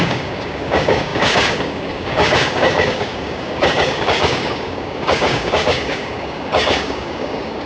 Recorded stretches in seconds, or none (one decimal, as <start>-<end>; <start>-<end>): none